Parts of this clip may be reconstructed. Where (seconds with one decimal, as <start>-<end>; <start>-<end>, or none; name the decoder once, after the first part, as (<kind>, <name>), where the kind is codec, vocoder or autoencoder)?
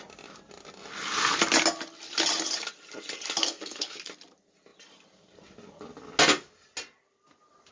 3.4-4.0 (codec, SNAC)